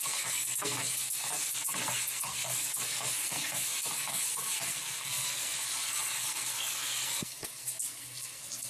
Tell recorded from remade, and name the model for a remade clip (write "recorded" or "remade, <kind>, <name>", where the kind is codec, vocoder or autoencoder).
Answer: remade, codec, SNAC